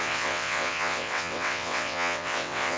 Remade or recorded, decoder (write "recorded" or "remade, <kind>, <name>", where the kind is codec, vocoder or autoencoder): remade, vocoder, WaveNeXt